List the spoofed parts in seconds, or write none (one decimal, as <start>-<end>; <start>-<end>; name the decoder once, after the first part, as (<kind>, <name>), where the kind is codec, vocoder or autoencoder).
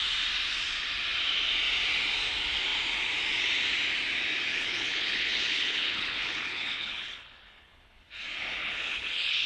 4.5-8.2 (codec, HILCodec); 8.6-9.5